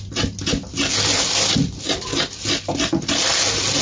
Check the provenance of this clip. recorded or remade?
recorded